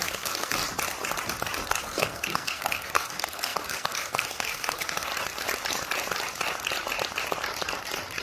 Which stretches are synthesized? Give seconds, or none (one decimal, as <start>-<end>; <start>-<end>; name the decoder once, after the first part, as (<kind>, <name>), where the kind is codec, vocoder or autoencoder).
0.0-0.6 (codec, SNAC); 1.7-5.1